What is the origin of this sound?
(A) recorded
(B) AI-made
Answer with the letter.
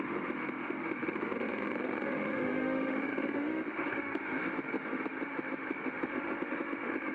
B